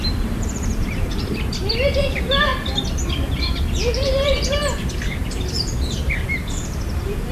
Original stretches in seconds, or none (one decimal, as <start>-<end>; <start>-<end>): 1.5-2.1; 2.5-3.1